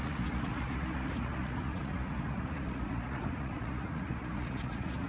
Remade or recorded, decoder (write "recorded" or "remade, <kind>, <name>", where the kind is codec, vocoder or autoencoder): remade, vocoder, Vocos